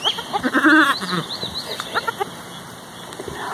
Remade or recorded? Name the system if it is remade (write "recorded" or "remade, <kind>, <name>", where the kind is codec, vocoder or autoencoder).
recorded